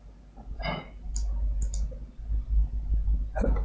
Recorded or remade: recorded